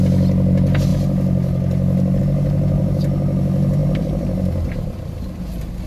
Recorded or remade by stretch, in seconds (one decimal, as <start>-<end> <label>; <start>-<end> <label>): 0.0-3.8 recorded; 3.8-5.2 remade; 5.2-5.9 recorded

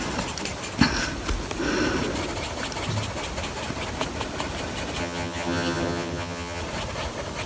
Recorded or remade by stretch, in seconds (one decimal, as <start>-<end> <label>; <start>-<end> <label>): 0.0-5.0 recorded; 5.0-6.6 remade; 6.6-7.5 recorded

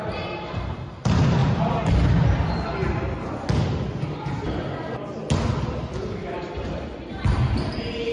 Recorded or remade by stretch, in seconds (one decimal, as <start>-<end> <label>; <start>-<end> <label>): 0.0-8.1 recorded

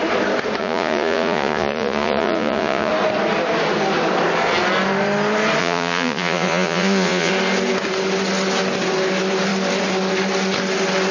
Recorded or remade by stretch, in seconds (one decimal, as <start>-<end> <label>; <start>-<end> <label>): 0.0-0.6 recorded; 0.6-2.9 remade; 2.9-5.6 recorded; 5.6-7.3 remade; 7.3-11.1 recorded

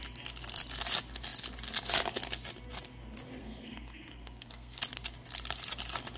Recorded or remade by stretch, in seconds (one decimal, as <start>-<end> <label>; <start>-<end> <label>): 0.0-3.4 recorded; 3.4-4.8 remade; 4.8-6.2 recorded

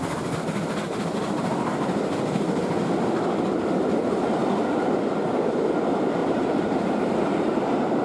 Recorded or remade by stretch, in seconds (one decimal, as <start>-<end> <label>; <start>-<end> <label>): 0.0-4.4 recorded; 4.4-5.1 remade; 5.1-6.2 recorded; 6.2-8.0 remade

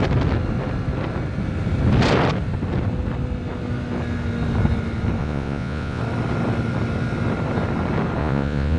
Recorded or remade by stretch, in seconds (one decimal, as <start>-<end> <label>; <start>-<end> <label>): 0.0-5.2 recorded; 5.2-6.0 remade; 6.0-8.2 recorded; 8.2-8.8 remade

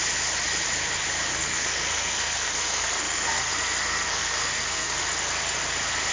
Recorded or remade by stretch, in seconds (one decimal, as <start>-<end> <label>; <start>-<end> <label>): 0.0-1.3 recorded; 1.3-5.0 remade; 5.0-6.1 recorded